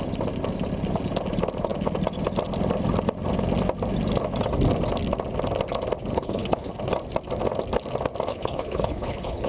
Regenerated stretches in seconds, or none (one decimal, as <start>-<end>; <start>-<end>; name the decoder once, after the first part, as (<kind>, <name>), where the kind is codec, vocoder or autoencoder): 6.1-6.7 (codec, HILCodec); 8.3-9.5

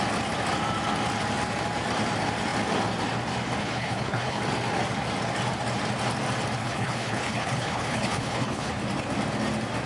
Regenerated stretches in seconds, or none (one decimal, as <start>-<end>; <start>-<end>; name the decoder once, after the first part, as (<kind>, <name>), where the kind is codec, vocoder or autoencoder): 3.6-4.4 (codec, HILCodec); 6.6-8.7

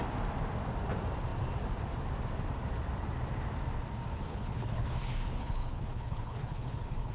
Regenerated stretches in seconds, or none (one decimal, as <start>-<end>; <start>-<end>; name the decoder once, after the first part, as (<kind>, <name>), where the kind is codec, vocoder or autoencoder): 4.3-7.1 (codec, HILCodec)